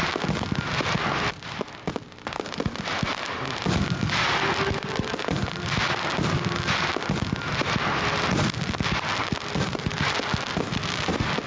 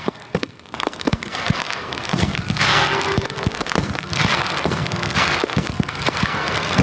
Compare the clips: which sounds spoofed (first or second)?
second